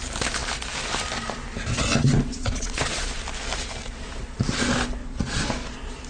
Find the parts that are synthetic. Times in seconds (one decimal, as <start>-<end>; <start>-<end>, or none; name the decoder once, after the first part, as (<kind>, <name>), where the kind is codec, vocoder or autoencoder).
2.3-3.1 (vocoder, Vocos); 5.0-5.5